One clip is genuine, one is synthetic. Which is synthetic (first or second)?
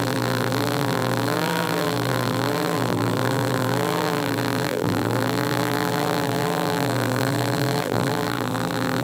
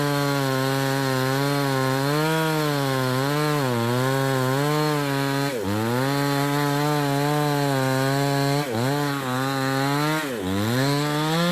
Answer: first